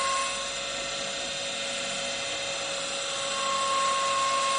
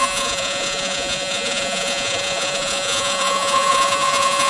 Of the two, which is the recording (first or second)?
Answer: first